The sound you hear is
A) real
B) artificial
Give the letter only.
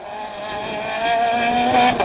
A